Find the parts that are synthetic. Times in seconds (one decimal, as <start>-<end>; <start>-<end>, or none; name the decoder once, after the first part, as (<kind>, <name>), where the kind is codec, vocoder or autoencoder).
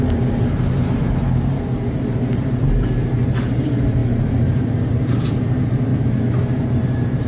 0.0-5.9 (vocoder, BigVGAN v2); 6.8-7.3